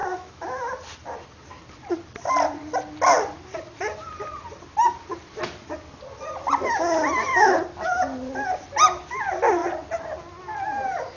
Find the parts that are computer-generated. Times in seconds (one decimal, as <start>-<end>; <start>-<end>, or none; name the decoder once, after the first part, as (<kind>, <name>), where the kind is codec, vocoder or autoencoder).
0.0-0.7 (autoencoder, DAC-VAE)